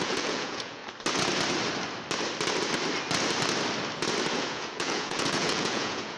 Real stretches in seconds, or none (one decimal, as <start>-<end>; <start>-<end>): 0.8-4.3